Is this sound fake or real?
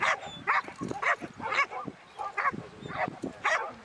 real